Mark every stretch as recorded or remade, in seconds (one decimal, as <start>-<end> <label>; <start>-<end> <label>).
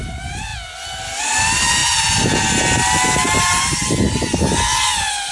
0.0-5.3 recorded